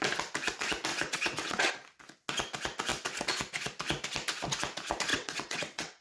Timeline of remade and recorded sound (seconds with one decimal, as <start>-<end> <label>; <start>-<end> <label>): 0.0-0.9 recorded; 0.9-1.7 remade; 1.7-5.1 recorded; 5.1-6.0 remade